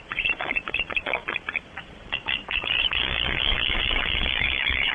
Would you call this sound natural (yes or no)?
no